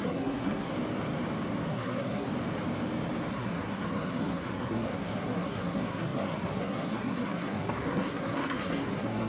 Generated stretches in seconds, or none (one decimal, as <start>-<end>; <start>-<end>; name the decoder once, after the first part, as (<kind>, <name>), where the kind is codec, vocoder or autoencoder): 0.0-0.7 (codec, SNAC); 1.7-2.3; 3.3-9.3